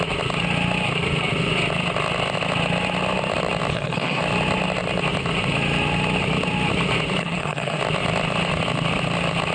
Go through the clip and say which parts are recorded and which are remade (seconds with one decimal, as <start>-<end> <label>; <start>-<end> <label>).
0.0-3.7 recorded; 3.7-4.2 remade; 4.2-7.2 recorded; 7.2-7.8 remade; 7.8-9.5 recorded